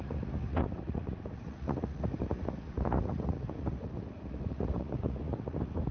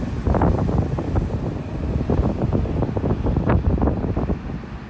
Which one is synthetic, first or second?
first